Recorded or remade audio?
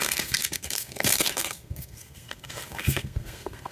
remade